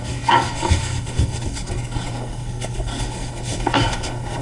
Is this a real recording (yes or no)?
no